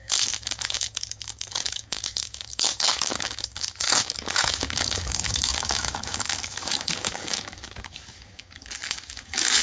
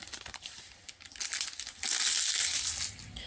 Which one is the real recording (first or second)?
second